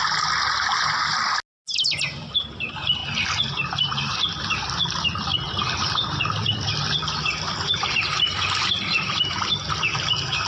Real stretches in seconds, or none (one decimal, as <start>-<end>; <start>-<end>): 0.0-5.3; 9.3-10.5